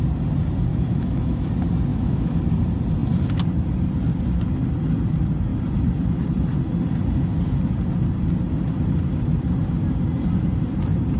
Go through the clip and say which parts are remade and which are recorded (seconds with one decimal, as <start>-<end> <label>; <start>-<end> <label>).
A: 0.0-0.7 recorded; 0.7-1.5 remade; 1.5-1.9 recorded; 1.9-2.4 remade; 2.4-11.2 recorded